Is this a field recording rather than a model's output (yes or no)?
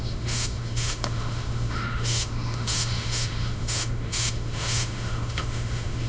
no